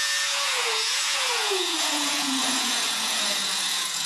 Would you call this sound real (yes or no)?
no